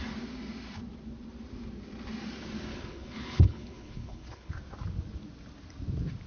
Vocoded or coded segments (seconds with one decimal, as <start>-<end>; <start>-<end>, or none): 2.7-4.5